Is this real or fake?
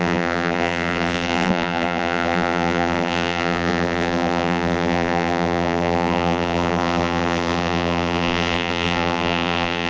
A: fake